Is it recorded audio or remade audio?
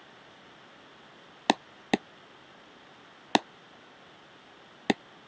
recorded